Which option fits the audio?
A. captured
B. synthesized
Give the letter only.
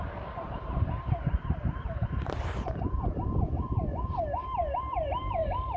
B